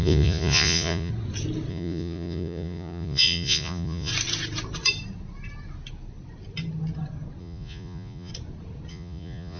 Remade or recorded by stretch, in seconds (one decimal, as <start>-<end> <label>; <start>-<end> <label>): 0.0-1.1 remade; 1.1-1.7 recorded; 1.7-4.1 remade; 4.1-7.4 recorded; 7.4-8.3 remade; 8.3-8.9 recorded; 8.9-9.6 remade